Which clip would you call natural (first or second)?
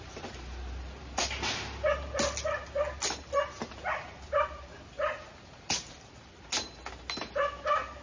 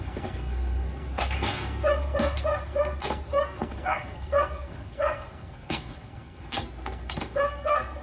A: first